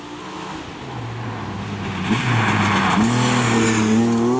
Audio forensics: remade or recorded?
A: recorded